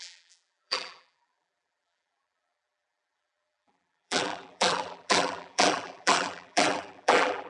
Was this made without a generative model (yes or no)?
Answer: no